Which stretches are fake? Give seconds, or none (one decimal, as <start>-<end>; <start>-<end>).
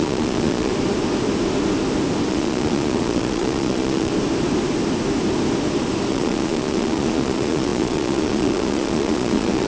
0.0-0.7; 2.3-4.1; 6.1-9.7